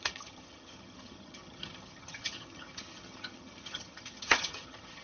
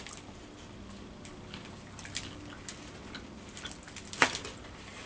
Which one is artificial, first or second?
first